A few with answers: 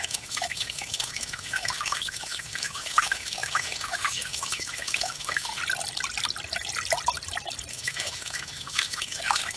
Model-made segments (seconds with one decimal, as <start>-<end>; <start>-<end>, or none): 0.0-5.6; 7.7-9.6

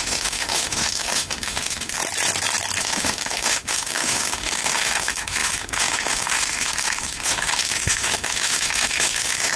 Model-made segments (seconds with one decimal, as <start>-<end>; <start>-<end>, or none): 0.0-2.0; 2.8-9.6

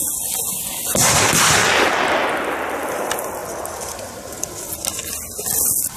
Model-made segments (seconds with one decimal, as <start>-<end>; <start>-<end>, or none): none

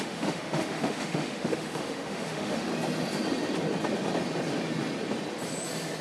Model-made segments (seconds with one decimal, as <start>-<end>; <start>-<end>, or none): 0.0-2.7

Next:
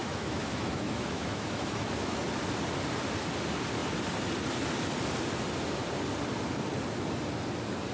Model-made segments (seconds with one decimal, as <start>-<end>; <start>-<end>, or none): 0.0-2.2

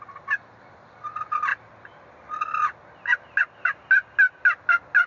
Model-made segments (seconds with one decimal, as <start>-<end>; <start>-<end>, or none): none

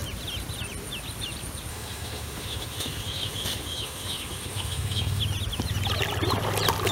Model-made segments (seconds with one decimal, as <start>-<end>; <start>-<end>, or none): 1.7-5.2